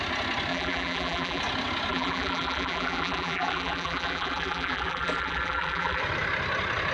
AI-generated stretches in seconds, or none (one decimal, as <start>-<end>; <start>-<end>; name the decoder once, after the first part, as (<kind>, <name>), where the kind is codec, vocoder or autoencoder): 0.5-1.4 (vocoder, BigVGAN v2); 1.9-6.0